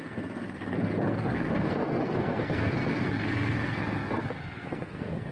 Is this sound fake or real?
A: fake